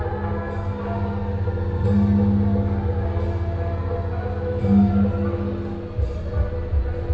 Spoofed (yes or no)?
no